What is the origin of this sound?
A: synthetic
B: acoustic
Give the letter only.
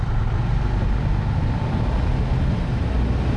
B